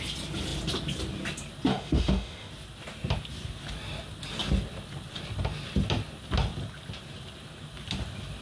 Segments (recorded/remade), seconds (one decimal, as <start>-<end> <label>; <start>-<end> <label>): 0.0-1.7 recorded; 1.7-2.5 remade; 2.5-8.4 recorded